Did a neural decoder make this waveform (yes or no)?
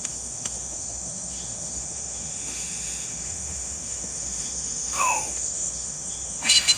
yes